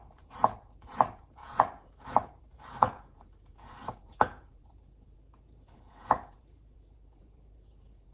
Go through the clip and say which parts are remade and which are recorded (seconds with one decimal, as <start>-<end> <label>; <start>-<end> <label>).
0.0-8.1 remade